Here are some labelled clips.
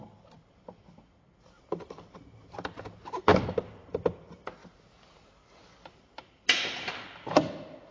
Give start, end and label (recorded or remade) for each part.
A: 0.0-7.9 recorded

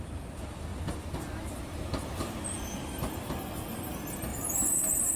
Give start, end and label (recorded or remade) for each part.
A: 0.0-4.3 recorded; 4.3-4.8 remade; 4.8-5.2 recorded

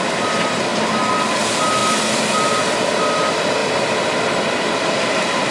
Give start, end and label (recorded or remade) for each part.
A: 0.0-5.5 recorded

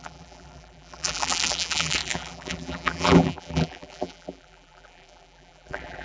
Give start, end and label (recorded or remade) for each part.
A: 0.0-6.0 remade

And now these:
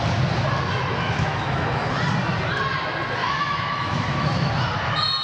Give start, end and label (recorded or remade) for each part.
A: 0.0-0.9 recorded; 0.9-1.9 remade; 1.9-3.2 recorded; 3.2-4.5 remade; 4.5-5.2 recorded

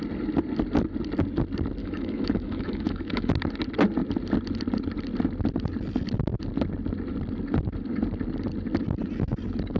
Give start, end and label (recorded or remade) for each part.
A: 0.0-1.8 recorded; 1.8-3.3 remade; 3.3-9.8 recorded

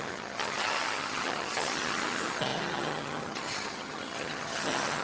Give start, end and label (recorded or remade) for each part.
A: 0.0-5.0 remade

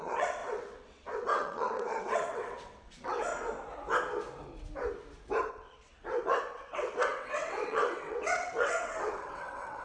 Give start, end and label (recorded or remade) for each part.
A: 0.0-3.3 remade; 3.3-5.5 recorded; 5.5-9.8 remade